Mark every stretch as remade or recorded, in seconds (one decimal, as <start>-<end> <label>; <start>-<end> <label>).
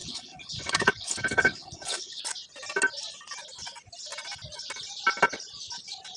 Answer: 0.0-2.2 remade; 2.2-6.2 recorded